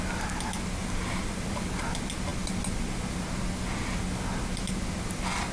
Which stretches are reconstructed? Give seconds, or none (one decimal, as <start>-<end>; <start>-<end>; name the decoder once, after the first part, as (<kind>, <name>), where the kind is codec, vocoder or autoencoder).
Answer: 0.8-1.8 (vocoder, BigVGAN v2)